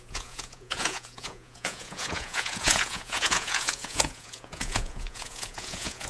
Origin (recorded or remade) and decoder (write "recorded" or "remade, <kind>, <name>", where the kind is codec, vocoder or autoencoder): remade, vocoder, Vocos